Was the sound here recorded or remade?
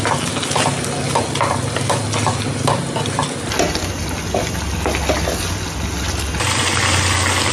recorded